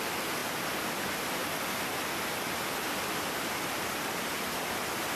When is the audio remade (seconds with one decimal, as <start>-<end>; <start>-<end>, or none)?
none